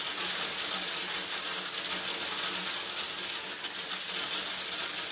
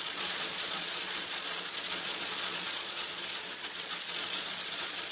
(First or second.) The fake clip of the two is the second